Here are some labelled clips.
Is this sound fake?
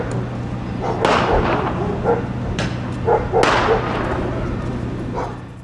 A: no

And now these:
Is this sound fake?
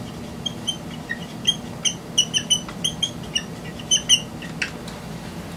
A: no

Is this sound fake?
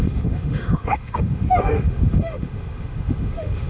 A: yes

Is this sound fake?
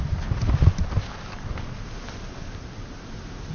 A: no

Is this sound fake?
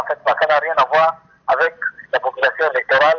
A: no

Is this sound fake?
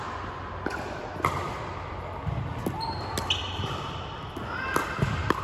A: no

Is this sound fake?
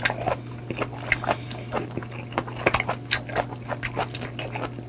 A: no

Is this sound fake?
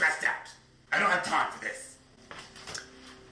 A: no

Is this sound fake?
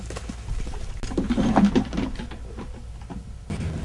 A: no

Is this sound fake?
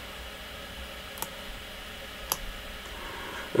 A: no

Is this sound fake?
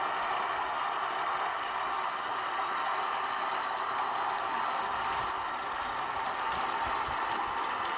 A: no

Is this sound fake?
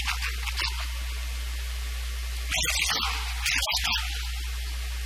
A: no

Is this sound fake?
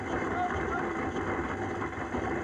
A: no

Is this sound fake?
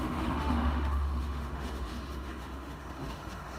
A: yes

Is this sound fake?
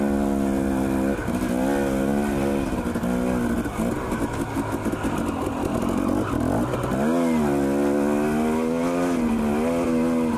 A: no